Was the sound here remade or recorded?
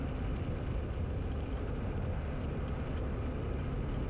recorded